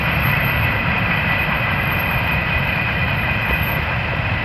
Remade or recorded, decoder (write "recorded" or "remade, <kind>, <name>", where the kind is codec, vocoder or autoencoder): remade, vocoder, BigVGAN v2